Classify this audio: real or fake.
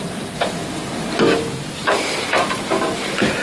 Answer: real